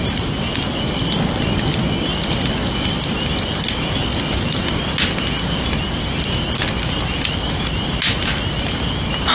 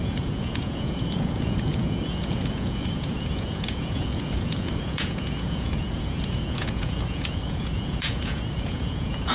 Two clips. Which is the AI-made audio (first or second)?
second